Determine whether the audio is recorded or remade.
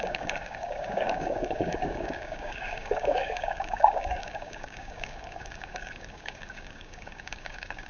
remade